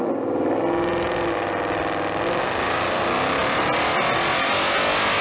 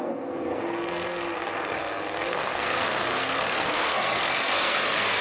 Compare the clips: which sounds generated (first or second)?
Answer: second